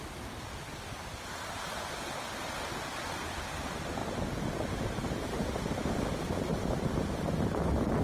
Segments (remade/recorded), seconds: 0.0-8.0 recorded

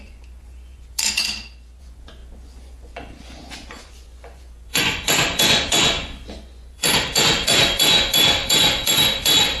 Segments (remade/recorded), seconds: 0.0-1.2 remade; 1.2-1.8 recorded; 1.8-9.6 remade

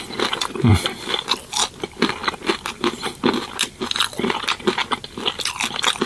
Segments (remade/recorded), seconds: 0.0-6.1 recorded

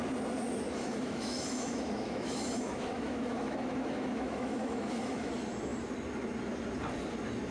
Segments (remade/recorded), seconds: 0.0-0.8 recorded; 0.8-5.3 remade; 5.3-7.5 recorded